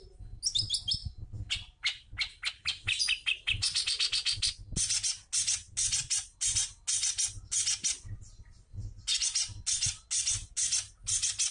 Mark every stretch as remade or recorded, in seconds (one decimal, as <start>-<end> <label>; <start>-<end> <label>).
0.0-11.5 recorded